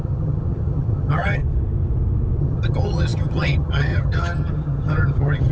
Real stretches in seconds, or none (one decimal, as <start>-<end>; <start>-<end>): 1.4-2.4